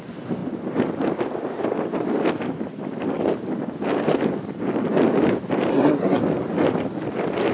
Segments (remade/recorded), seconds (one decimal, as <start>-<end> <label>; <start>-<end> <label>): 0.0-5.7 recorded; 5.7-6.2 remade; 6.2-7.5 recorded